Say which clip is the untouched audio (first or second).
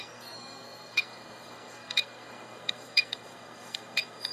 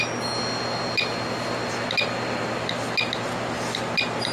second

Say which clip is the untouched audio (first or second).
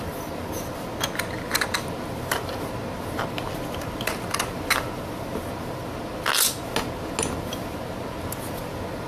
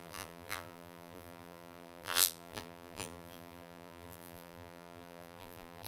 first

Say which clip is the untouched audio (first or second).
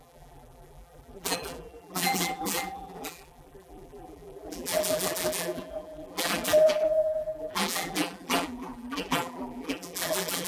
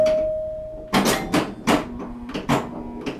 second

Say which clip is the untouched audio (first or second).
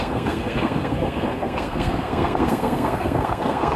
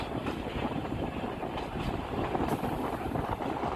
second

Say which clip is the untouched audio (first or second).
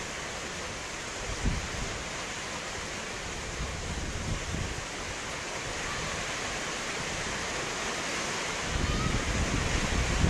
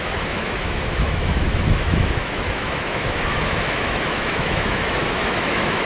first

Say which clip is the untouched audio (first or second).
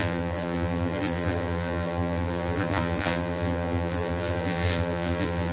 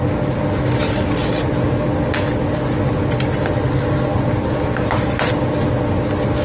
second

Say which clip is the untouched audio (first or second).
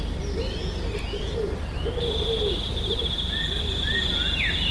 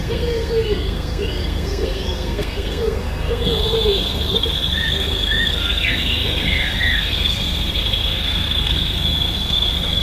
first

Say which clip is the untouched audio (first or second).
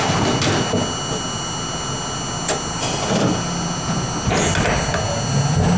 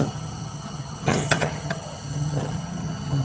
first